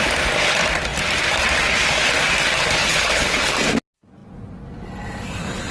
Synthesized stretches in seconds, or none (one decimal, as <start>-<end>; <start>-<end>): 2.8-3.4